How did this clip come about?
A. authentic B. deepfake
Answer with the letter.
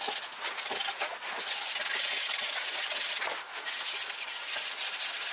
A